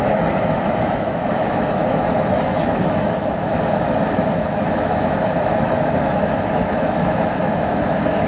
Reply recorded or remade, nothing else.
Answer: remade